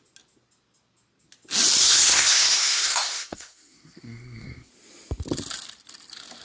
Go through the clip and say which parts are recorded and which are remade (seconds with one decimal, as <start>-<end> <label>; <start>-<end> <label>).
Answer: 0.0-1.8 recorded; 1.8-4.7 remade; 4.7-6.4 recorded